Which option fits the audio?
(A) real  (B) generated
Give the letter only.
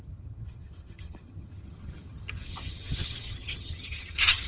B